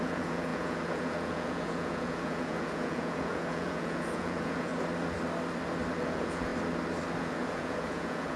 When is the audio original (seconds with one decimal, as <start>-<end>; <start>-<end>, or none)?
4.7-6.0; 6.5-7.2